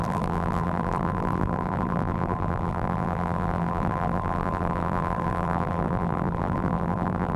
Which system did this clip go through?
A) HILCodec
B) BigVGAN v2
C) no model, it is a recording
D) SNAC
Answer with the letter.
B